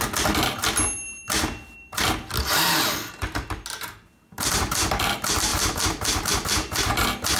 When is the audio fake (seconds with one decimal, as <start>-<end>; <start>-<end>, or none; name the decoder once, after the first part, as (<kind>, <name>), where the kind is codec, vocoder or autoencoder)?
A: 5.5-6.9 (vocoder, BigVGAN v2)